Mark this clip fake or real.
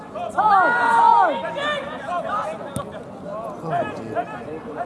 real